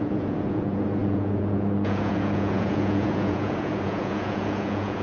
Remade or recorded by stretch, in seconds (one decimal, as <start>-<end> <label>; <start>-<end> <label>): 0.0-5.0 remade